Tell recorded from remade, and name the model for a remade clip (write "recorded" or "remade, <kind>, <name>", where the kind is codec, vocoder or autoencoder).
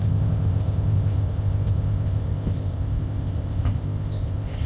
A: remade, codec, ZipCodec